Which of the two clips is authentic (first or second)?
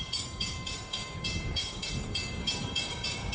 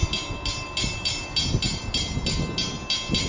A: second